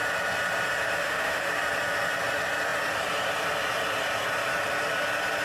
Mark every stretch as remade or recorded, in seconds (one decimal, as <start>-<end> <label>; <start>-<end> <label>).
0.0-1.0 recorded; 1.0-1.5 remade; 1.5-5.4 recorded